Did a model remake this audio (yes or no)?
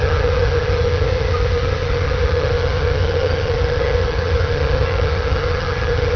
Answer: yes